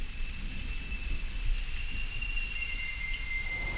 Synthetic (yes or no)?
yes